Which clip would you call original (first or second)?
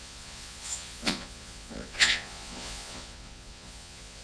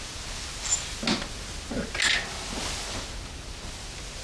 second